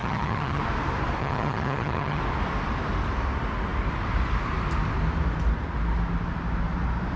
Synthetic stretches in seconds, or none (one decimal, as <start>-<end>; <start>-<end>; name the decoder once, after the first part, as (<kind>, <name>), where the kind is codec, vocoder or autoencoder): 0.0-0.6 (vocoder, HiFi-GAN); 1.2-2.2